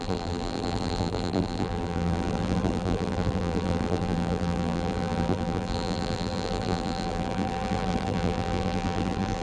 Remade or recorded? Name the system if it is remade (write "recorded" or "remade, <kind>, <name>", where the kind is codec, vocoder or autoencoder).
remade, vocoder, BigVGAN v2